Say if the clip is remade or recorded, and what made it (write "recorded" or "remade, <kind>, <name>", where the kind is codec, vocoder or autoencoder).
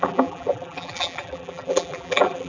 remade, vocoder, BigVGAN v2